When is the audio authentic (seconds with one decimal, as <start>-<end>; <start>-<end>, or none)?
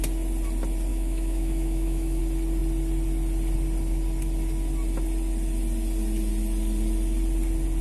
0.0-0.9; 2.2-7.8